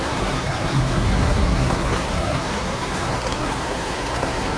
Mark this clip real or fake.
fake